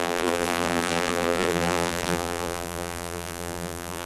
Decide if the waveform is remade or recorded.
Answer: remade